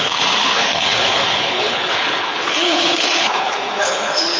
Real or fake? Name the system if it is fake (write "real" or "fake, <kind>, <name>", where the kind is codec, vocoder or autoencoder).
fake, codec, HILCodec